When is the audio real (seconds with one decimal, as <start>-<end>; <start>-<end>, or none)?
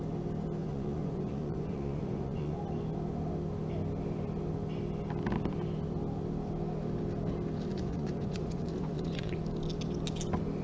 0.0-0.6; 2.6-7.7; 9.4-10.6